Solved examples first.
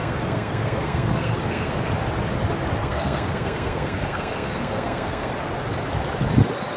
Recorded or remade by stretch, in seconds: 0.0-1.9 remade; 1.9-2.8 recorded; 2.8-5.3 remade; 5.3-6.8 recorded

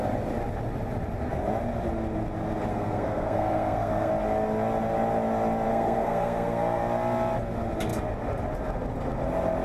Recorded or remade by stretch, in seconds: 0.0-2.7 recorded; 2.7-4.1 remade; 4.1-5.7 recorded; 5.7-6.8 remade; 6.8-9.6 recorded

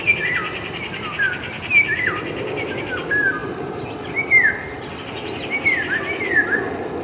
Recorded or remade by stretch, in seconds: 0.0-7.0 recorded

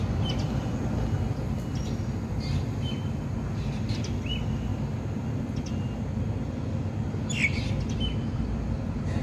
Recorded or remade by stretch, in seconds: 0.0-9.2 recorded

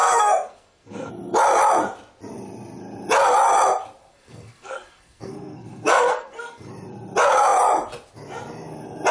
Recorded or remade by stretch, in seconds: 0.0-1.1 remade; 1.1-4.0 recorded; 4.0-6.7 remade; 6.7-9.1 recorded